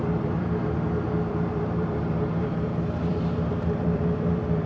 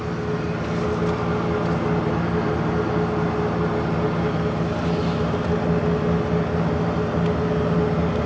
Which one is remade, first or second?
first